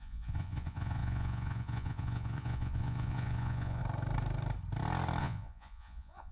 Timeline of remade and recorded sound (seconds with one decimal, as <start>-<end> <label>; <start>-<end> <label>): 0.0-3.8 remade; 3.8-5.2 recorded; 5.2-6.3 remade